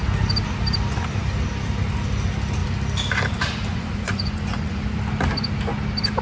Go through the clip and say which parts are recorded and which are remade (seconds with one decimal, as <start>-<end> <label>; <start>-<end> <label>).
0.0-3.7 recorded; 3.7-4.8 remade; 4.8-6.2 recorded